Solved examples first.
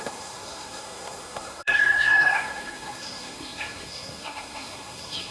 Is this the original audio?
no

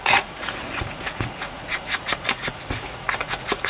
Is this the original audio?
no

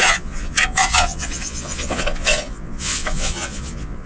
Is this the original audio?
no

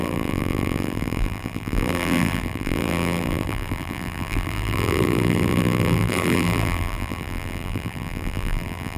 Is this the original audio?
no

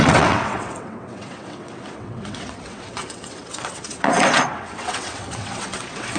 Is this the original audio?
no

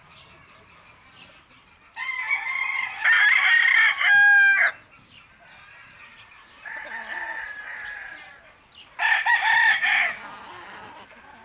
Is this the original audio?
yes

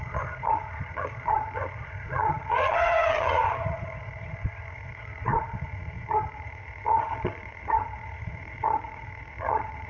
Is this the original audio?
no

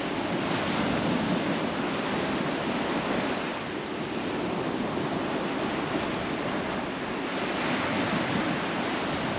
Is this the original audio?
yes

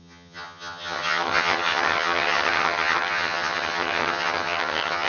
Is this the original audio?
no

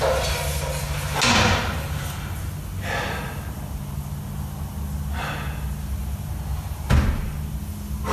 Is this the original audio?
yes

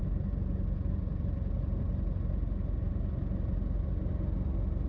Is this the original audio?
yes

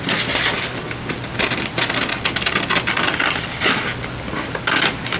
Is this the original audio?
yes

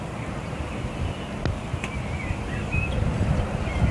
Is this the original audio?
yes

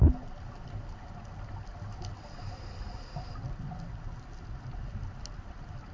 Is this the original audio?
yes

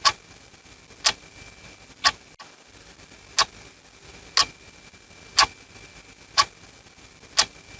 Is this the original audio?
yes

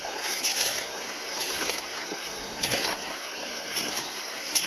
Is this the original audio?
no